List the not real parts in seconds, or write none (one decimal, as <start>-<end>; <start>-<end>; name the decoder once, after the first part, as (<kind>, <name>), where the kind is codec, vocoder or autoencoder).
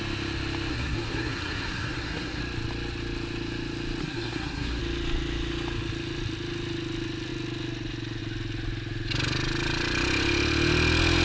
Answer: 0.7-2.4 (codec, SNAC); 4.0-4.8